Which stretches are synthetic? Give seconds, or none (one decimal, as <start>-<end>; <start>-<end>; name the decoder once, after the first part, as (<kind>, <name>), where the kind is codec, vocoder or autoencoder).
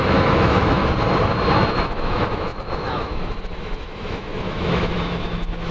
0.0-0.8 (autoencoder, DAC-VAE); 1.7-5.7